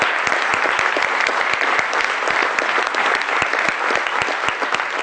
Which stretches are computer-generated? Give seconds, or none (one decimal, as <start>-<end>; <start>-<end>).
none